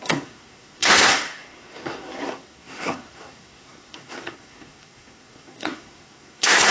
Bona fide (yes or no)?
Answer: no